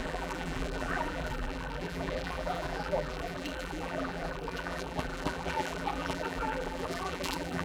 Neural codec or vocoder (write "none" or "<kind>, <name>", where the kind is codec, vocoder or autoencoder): vocoder, BigVGAN v2